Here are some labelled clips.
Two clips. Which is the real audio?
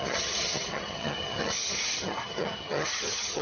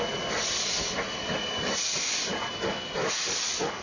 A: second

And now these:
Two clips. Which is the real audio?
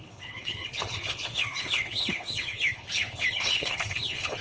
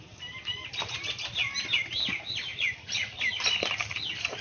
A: second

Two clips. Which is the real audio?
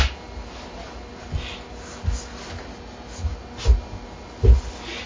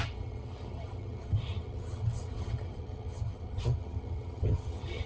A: first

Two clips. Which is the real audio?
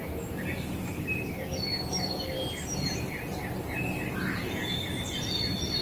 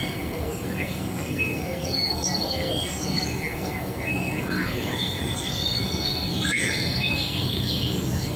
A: first